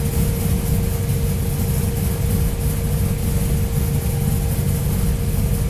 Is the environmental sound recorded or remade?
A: recorded